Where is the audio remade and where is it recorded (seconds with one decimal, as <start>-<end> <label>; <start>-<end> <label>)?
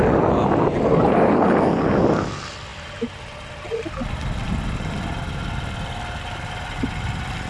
0.0-7.5 recorded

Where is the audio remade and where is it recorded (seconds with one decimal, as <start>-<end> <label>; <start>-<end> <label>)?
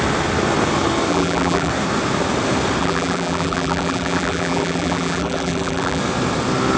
0.0-1.1 recorded; 1.1-1.7 remade; 1.7-2.8 recorded; 2.8-6.0 remade; 6.0-6.8 recorded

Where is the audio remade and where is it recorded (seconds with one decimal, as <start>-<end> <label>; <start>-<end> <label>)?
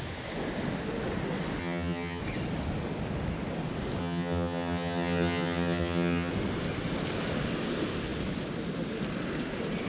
0.0-1.6 recorded; 1.6-2.2 remade; 2.2-4.0 recorded; 4.0-6.3 remade; 6.3-9.9 recorded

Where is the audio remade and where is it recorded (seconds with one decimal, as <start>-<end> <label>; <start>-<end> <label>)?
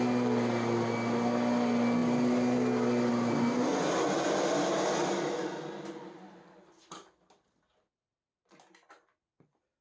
0.0-9.8 recorded